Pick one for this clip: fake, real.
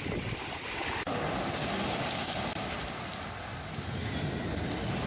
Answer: real